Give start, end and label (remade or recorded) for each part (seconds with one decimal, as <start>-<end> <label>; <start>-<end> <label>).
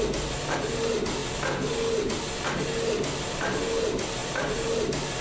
0.0-5.2 recorded